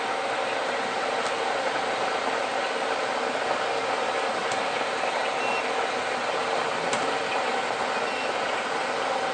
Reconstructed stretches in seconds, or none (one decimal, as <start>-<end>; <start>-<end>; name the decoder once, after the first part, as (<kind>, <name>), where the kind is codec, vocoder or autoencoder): none